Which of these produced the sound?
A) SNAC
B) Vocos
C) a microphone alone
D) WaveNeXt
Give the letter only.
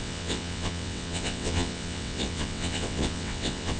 D